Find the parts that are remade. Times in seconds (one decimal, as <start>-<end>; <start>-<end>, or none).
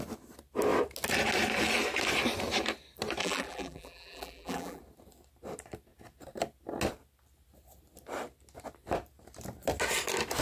3.2-4.8